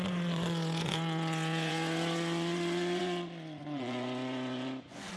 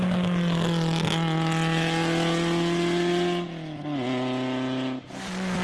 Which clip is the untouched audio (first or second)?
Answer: second